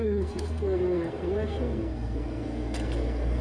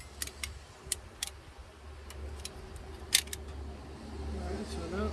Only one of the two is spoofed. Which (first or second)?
first